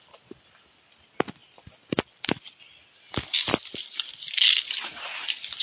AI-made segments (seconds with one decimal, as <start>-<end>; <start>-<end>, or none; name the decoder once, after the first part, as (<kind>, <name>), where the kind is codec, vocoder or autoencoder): none